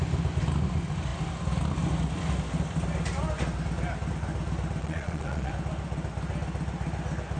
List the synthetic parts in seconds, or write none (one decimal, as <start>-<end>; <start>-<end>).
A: 4.8-5.5